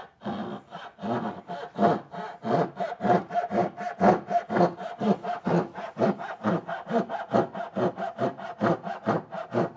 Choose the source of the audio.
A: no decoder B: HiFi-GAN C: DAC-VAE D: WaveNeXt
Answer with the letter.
A